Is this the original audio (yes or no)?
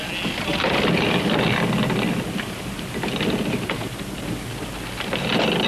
yes